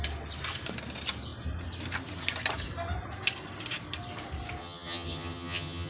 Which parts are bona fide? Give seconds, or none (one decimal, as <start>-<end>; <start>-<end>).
0.0-4.6